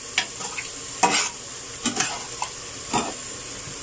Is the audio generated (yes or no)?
no